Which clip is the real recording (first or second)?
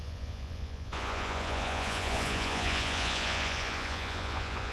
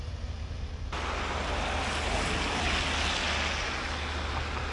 second